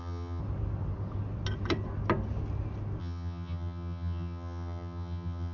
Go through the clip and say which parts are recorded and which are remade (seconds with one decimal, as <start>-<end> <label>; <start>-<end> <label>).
0.0-0.4 remade; 0.4-3.0 recorded; 3.0-5.5 remade